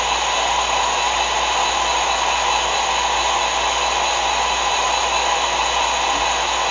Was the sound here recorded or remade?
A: recorded